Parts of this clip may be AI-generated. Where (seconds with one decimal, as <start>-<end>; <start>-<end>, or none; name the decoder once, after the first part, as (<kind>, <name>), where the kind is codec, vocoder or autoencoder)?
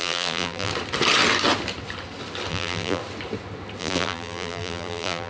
0.0-0.7 (vocoder, BigVGAN v2); 2.5-3.0; 3.8-5.3